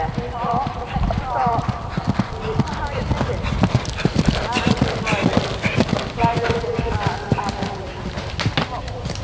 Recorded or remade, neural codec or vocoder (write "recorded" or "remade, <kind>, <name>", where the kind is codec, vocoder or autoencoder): recorded